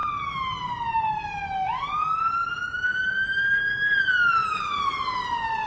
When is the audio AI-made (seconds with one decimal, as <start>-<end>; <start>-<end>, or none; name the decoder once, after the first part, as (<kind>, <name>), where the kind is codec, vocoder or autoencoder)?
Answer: 4.4-5.7 (vocoder, BigVGAN v2)